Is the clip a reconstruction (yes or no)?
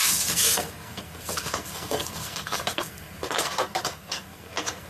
yes